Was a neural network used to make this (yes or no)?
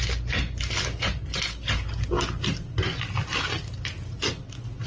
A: no